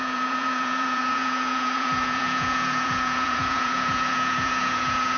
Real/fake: fake